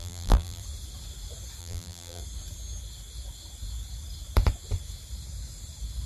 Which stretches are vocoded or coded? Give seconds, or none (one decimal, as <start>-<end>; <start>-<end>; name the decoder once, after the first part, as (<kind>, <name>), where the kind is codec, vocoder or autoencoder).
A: 0.0-0.6 (vocoder, BigVGAN v2); 1.6-2.2